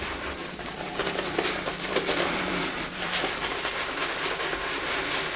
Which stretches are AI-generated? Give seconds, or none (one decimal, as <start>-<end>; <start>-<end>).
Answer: 0.4-3.6